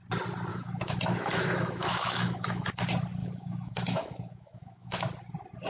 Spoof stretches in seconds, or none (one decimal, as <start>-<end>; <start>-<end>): 0.5-2.8; 3.2-5.0